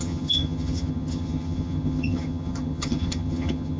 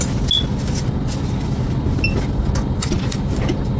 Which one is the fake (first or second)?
first